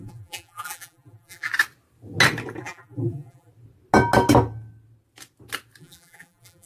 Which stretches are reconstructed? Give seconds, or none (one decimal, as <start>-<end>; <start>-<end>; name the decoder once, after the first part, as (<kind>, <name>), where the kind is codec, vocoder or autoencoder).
0.0-1.5 (vocoder, BigVGAN v2); 2.6-3.5; 5.8-6.7